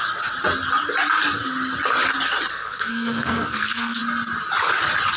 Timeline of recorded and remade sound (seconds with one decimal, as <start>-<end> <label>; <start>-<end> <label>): 0.0-2.5 recorded; 2.5-4.0 remade; 4.0-5.2 recorded